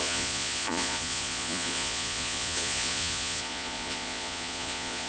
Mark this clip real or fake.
fake